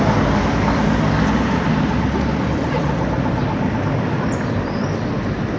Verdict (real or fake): real